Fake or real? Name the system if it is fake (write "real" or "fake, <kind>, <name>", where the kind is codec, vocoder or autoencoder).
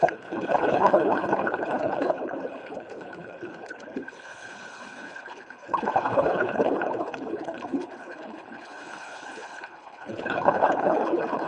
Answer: fake, codec, HILCodec